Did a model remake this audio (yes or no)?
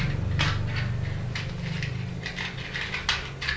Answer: no